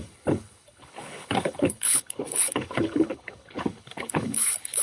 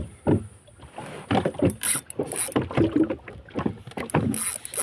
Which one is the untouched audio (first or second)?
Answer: second